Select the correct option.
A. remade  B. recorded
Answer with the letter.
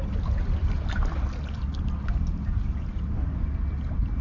B